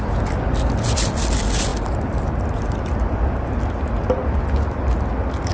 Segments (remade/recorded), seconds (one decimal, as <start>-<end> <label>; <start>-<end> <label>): 0.0-5.5 recorded